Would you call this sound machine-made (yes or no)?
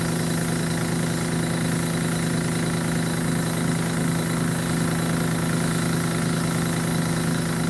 no